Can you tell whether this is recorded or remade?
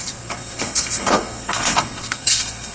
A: remade